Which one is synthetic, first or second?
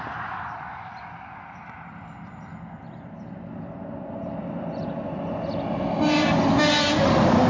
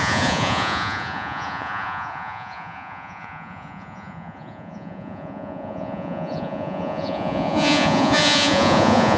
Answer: second